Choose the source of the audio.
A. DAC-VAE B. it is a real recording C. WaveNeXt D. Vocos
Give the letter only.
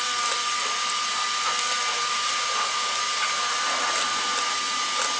B